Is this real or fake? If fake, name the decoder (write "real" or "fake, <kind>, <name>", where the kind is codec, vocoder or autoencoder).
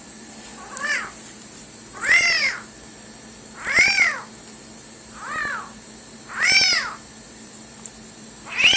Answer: real